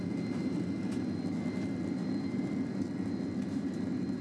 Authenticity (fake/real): real